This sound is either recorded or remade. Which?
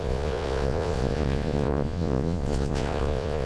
remade